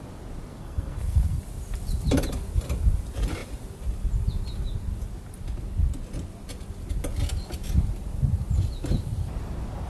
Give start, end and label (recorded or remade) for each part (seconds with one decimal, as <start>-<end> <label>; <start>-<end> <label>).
0.0-0.5 recorded; 0.5-1.4 remade; 1.4-9.9 recorded